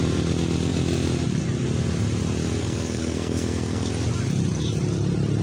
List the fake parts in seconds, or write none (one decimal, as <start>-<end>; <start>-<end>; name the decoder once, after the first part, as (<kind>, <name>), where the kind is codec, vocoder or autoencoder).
2.6-3.9 (codec, SNAC)